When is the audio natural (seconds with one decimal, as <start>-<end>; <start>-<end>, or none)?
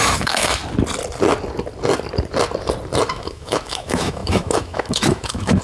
0.6-3.1